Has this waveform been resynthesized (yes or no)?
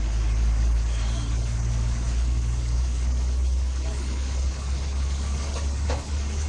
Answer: yes